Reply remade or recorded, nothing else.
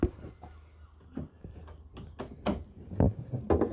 recorded